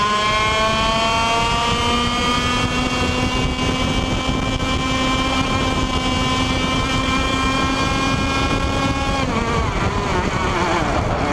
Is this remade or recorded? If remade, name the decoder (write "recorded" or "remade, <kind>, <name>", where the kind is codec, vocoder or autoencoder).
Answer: recorded